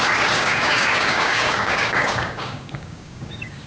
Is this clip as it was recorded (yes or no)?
no